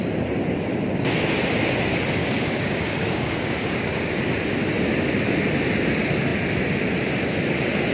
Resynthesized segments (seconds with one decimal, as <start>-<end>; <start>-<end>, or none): 2.2-4.1